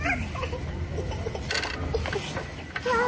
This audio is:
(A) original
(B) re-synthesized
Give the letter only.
A